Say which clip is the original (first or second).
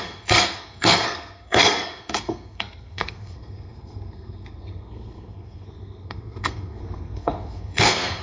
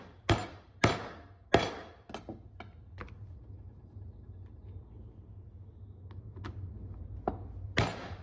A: second